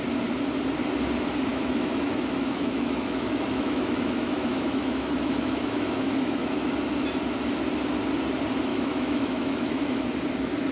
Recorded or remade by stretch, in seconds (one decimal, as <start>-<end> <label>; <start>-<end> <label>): 0.0-1.5 recorded; 1.5-6.7 remade; 6.7-8.7 recorded; 8.7-10.0 remade; 10.0-10.7 recorded